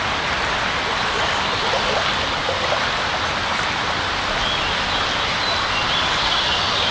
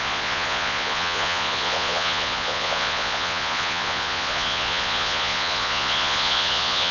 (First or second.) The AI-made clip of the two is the second